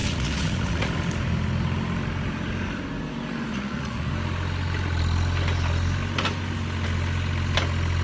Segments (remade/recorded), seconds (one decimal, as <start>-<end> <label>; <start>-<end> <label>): 0.0-0.9 remade; 0.9-3.5 recorded; 3.5-4.1 remade; 4.1-8.0 recorded